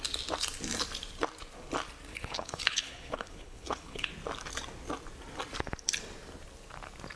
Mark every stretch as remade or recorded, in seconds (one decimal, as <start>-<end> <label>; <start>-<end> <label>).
0.0-2.1 recorded; 2.1-4.1 remade; 4.1-7.2 recorded